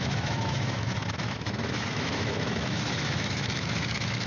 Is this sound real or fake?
fake